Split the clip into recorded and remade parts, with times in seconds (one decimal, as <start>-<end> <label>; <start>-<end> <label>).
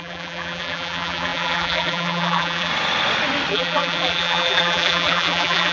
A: 0.0-2.7 remade; 2.7-3.5 recorded; 3.5-5.7 remade